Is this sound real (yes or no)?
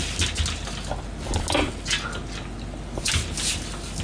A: yes